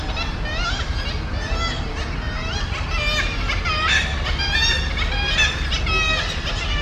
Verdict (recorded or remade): recorded